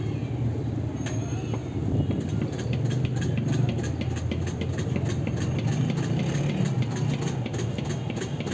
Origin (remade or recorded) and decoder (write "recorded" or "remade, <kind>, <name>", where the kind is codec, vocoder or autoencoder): recorded